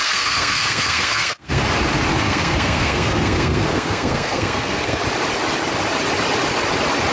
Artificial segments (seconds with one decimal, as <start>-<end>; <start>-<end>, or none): 0.0-1.6; 2.1-5.0